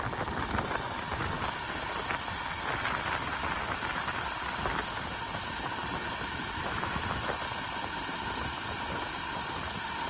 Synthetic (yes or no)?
no